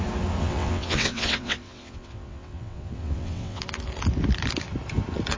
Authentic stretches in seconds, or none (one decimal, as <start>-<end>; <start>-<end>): 0.0-0.4; 3.6-5.4